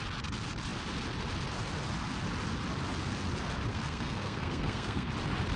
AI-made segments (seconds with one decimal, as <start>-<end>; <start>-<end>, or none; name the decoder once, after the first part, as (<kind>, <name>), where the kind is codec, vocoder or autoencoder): 3.7-5.1 (codec, SNAC)